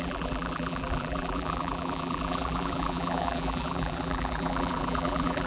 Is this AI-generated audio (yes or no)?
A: yes